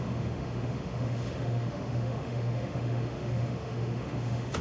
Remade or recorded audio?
remade